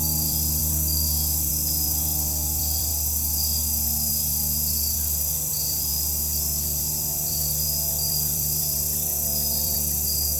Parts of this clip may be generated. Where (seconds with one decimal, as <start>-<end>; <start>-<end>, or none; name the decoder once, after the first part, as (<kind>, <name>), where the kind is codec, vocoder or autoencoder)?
0.0-2.9 (vocoder, BigVGAN v2); 4.1-10.4